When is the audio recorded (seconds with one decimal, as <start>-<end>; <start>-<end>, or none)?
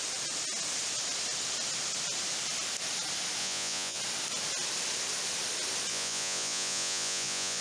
0.0-3.4; 4.0-5.9